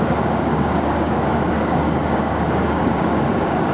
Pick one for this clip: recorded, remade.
remade